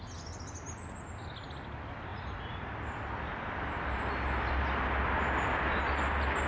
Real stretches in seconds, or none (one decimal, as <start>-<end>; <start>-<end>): 0.0-2.1; 2.7-6.5